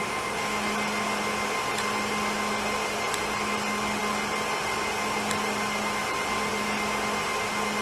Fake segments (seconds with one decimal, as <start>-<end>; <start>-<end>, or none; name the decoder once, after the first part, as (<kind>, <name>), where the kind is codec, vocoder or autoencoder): none

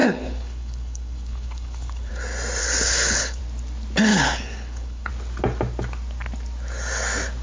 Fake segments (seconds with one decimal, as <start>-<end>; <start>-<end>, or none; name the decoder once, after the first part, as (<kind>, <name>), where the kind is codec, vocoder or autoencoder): 0.0-2.1 (codec, HILCodec); 2.6-3.4; 4.1-5.1